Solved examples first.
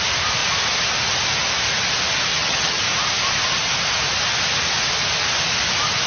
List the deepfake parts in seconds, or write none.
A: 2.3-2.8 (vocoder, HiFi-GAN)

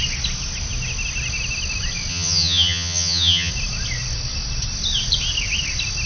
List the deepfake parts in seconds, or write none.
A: 2.1-3.5 (vocoder, HiFi-GAN)

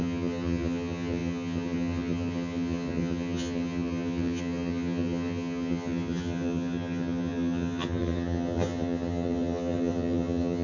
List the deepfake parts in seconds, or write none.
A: 0.0-10.6 (vocoder, HiFi-GAN)

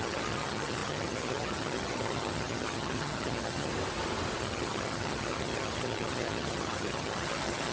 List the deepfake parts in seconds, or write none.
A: 0.0-3.7 (vocoder, HiFi-GAN); 4.4-7.7

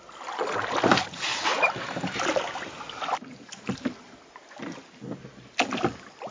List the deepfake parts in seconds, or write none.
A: none

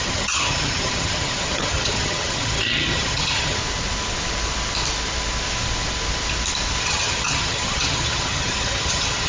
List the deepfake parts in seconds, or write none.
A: 0.0-3.6 (vocoder, HiFi-GAN); 6.8-9.3